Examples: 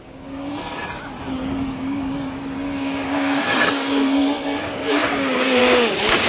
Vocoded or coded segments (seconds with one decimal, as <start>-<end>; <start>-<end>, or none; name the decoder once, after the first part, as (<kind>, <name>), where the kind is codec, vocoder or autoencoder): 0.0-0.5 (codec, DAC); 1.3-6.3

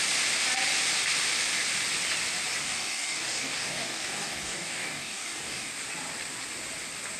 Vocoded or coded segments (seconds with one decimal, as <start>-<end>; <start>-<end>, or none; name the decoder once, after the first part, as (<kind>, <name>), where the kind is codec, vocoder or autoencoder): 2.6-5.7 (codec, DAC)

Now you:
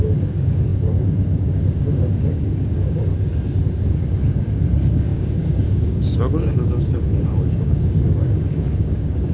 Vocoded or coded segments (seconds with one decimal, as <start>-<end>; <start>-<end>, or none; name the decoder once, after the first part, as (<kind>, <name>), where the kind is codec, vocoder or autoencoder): 0.0-3.1 (codec, DAC); 3.9-9.3